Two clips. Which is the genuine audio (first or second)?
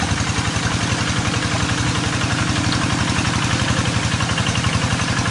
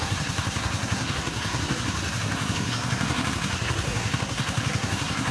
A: first